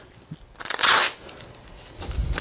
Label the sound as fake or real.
real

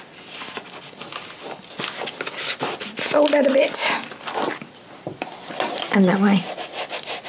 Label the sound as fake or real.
real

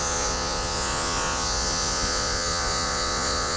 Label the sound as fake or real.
fake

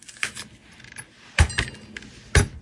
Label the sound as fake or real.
real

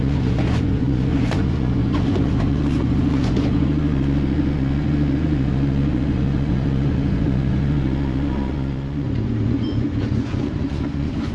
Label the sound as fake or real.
fake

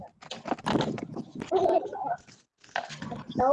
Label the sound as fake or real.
real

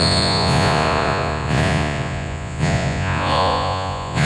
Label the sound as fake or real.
fake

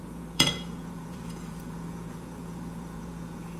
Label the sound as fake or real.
fake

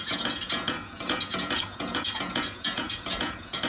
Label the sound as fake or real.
fake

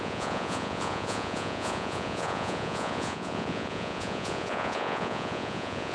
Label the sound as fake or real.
fake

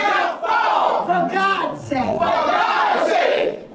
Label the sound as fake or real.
fake